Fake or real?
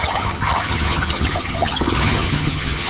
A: fake